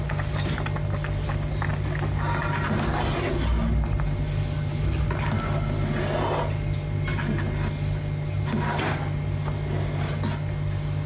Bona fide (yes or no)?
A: yes